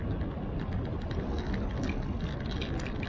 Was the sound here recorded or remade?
recorded